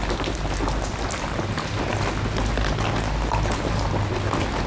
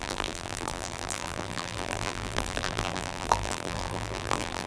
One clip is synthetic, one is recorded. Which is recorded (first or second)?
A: first